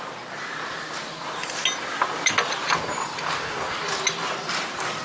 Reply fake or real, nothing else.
real